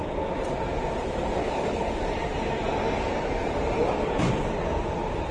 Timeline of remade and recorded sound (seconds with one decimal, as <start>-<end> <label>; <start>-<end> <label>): 0.0-1.4 recorded; 1.4-1.9 remade; 1.9-5.3 recorded